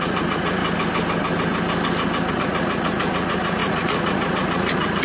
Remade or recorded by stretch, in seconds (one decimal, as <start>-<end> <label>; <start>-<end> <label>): 0.0-0.6 remade; 0.6-2.3 recorded; 2.3-5.0 remade